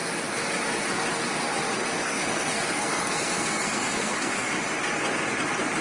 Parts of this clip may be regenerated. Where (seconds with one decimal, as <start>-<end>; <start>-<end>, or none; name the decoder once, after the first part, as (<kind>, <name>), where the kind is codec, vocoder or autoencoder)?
2.0-4.5 (codec, SNAC)